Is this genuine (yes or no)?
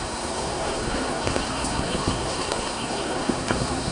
no